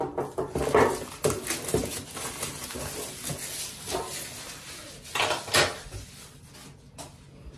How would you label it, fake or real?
real